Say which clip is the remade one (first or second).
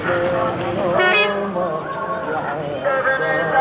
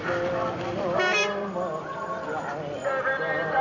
second